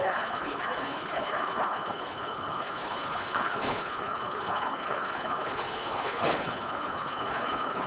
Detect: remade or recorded remade